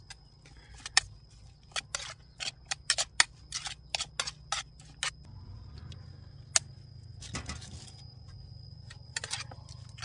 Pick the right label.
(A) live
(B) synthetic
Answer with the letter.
A